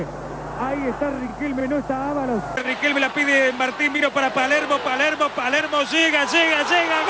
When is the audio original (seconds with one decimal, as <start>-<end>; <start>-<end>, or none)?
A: 0.0-7.1